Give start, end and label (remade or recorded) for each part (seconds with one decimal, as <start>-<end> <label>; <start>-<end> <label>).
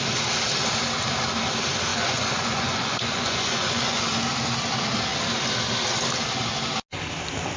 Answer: 0.0-1.9 recorded; 1.9-4.0 remade; 4.0-7.6 recorded